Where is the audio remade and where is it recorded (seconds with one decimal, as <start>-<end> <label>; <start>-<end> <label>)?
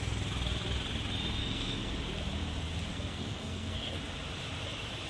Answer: 0.0-1.4 recorded; 1.4-1.9 remade; 1.9-2.9 recorded; 2.9-4.0 remade; 4.0-5.1 recorded